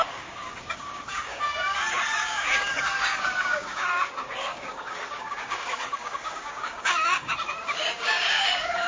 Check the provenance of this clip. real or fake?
fake